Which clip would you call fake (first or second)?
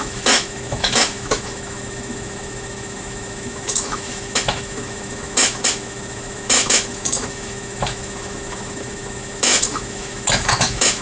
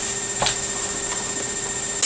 first